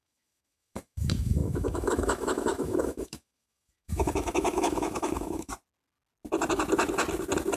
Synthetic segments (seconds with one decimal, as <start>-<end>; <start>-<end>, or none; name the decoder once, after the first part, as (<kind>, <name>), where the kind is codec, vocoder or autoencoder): 0.0-5.5 (autoencoder, DAC-VAE)